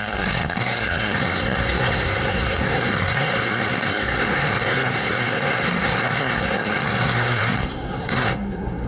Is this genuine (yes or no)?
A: no